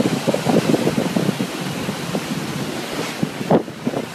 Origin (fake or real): real